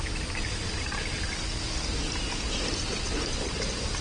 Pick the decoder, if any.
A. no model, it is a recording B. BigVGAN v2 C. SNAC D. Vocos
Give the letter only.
A